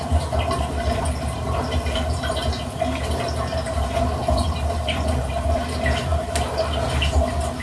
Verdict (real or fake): fake